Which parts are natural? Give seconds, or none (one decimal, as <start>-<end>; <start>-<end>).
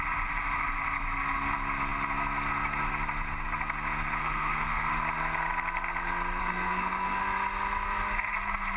0.0-4.2; 4.9-6.4; 7.2-8.8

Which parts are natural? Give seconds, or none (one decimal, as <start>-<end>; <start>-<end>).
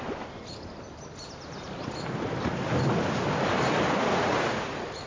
0.0-4.1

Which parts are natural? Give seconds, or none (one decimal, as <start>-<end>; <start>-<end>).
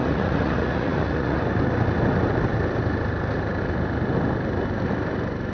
1.4-5.5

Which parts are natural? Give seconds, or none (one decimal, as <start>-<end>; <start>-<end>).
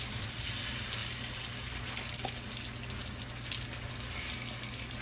0.0-5.0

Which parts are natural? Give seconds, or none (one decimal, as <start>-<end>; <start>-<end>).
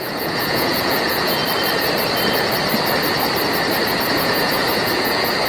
1.4-3.9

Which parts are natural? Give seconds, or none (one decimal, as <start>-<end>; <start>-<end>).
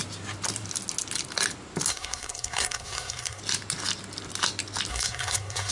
0.0-1.9; 3.4-4.9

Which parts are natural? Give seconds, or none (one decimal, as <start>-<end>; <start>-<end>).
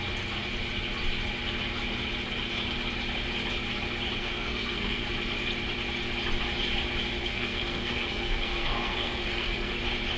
0.0-4.2; 5.1-7.2; 9.7-10.2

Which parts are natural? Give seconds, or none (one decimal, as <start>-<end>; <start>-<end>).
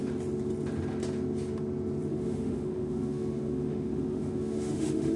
0.0-2.1